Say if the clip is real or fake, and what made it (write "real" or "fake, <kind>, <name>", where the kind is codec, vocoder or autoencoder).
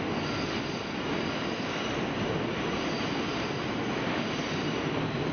real